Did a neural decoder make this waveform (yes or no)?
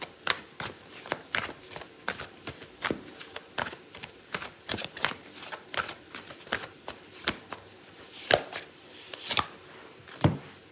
yes